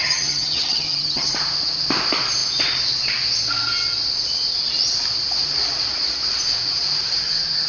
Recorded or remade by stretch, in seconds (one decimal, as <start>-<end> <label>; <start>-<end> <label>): 0.0-1.3 remade; 1.3-7.7 recorded